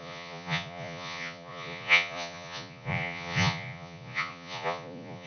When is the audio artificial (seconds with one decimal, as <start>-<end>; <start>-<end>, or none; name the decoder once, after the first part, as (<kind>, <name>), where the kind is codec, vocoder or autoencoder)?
0.0-5.3 (vocoder, Vocos)